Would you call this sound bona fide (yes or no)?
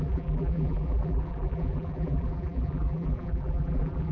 no